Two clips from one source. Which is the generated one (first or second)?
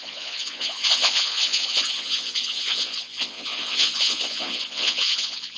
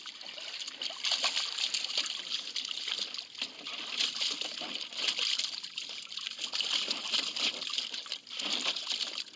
first